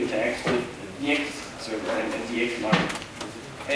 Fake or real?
real